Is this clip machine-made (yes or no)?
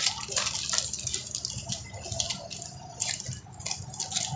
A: no